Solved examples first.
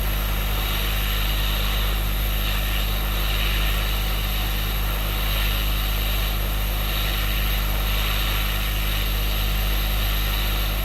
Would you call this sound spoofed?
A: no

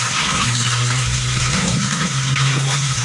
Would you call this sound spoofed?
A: yes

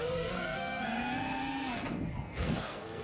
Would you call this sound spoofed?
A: yes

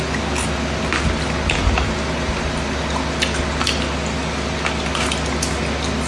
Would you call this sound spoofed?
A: no